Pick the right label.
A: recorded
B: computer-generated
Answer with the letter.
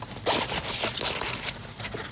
B